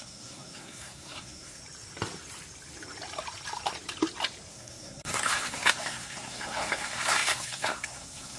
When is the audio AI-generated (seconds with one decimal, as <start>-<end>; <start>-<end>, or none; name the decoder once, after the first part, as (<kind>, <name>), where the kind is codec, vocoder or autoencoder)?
0.0-1.6 (codec, SNAC); 4.5-8.4